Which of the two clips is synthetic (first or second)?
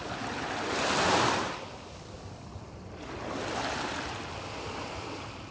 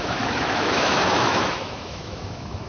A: second